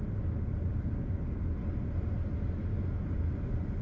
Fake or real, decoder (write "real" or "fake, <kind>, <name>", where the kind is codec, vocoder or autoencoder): real